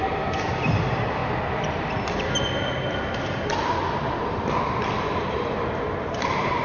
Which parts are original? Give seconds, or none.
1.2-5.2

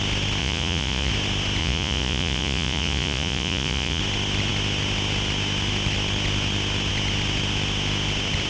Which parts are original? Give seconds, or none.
0.0-0.4; 1.1-1.6; 4.0-8.5

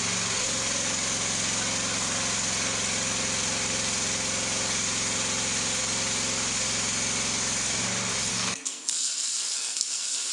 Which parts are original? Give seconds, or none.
0.0-8.3

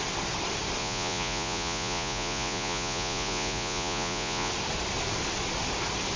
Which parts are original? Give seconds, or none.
0.0-0.8; 4.5-6.2

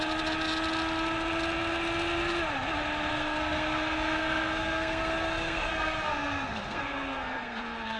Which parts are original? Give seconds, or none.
0.0-3.1

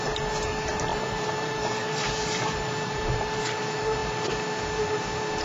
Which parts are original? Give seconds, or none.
0.0-0.9; 3.4-5.4

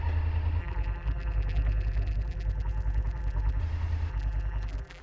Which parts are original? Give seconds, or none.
0.0-0.6; 3.6-4.1

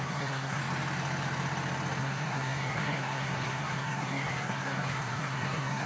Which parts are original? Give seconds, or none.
0.6-2.0